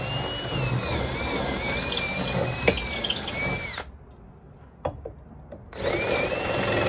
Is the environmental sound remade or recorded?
recorded